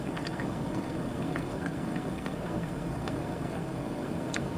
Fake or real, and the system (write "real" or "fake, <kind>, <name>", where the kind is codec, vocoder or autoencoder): fake, codec, SNAC